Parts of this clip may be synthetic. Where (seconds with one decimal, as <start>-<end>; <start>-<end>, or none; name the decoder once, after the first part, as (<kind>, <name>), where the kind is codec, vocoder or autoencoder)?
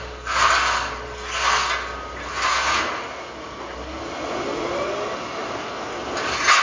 none